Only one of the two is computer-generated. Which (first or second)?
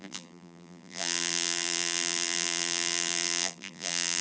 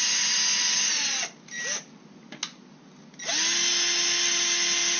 first